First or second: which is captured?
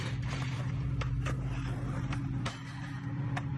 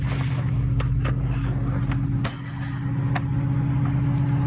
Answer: second